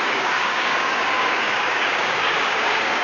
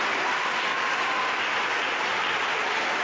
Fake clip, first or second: first